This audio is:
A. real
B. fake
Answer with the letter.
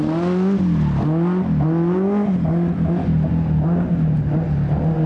A